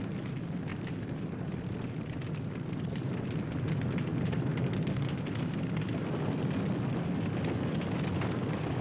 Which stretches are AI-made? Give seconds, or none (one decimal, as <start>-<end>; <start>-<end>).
0.7-3.1; 4.1-5.4